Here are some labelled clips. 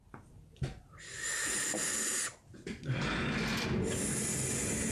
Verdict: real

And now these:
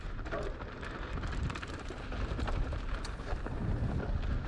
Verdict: fake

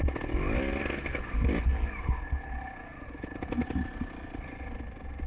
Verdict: real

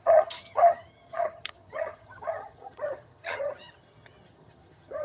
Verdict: fake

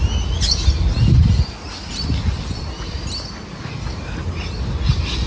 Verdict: real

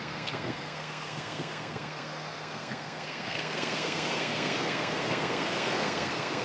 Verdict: fake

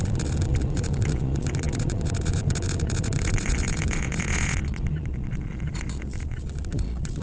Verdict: fake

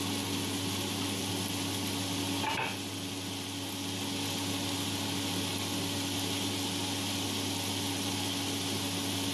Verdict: real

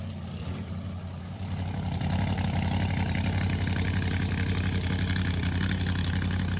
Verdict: real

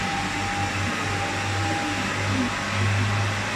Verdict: real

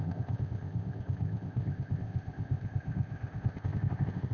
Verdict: fake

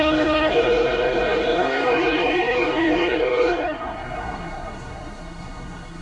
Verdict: fake